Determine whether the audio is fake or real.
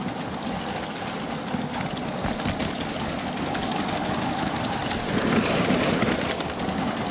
real